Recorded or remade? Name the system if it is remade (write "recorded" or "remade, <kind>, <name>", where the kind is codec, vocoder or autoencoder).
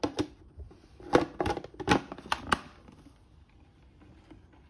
recorded